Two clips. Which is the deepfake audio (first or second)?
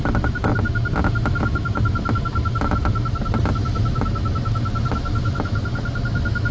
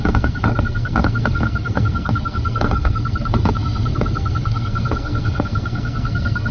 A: second